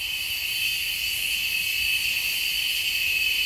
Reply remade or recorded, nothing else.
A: recorded